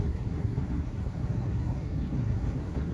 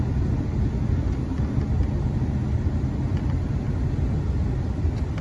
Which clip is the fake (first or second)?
first